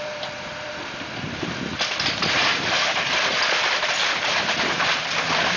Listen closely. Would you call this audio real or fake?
fake